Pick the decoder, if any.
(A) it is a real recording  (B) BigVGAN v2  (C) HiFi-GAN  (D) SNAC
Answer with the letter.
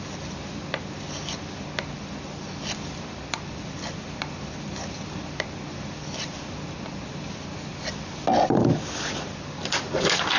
A